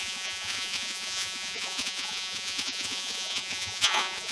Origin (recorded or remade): remade